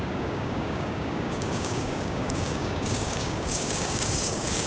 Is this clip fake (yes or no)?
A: yes